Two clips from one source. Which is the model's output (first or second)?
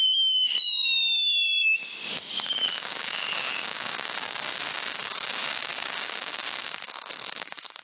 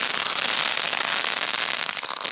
first